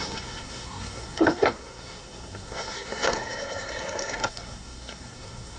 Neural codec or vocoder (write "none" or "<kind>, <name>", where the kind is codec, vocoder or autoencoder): codec, SNAC